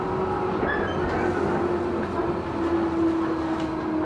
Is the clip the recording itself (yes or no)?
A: yes